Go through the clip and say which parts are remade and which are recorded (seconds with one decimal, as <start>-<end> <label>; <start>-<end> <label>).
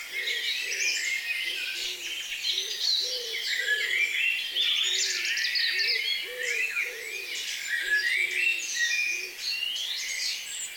0.0-8.5 recorded; 8.5-9.2 remade; 9.2-10.8 recorded